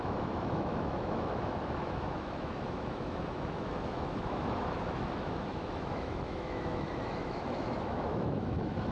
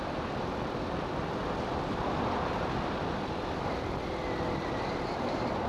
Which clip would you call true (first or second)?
second